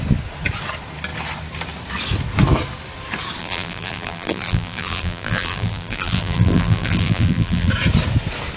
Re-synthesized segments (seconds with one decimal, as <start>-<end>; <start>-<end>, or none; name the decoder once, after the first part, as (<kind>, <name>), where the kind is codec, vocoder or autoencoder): 3.4-7.7 (vocoder, BigVGAN v2)